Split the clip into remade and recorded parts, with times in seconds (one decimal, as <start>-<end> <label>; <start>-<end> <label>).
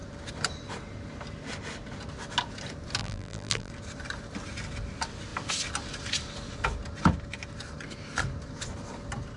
0.0-3.0 recorded; 3.0-3.7 remade; 3.7-9.4 recorded